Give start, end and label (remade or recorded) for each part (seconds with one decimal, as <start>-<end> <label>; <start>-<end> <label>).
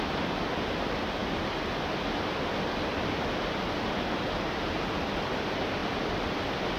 0.0-5.8 recorded; 5.8-6.8 remade